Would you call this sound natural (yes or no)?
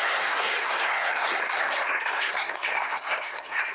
no